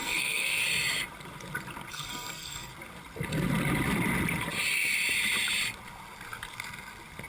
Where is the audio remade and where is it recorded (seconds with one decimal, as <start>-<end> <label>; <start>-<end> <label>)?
0.0-0.6 remade; 0.6-1.9 recorded; 1.9-2.7 remade; 2.7-7.3 recorded